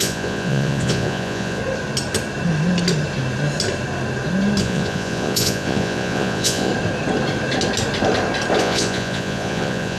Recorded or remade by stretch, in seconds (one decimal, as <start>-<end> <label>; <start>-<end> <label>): 0.0-1.6 remade; 1.6-4.6 recorded; 4.6-6.7 remade; 6.7-8.6 recorded; 8.6-10.0 remade